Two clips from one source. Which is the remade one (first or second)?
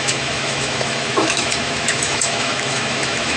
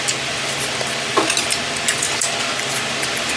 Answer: first